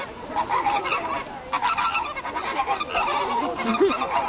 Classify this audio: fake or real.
real